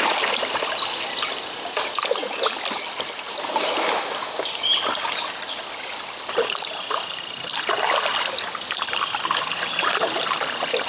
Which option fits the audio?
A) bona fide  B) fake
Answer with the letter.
A